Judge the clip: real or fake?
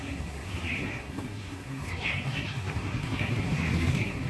fake